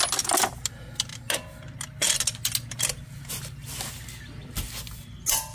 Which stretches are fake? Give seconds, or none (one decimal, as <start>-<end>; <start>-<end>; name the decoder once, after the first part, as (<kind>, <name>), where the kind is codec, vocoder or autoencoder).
none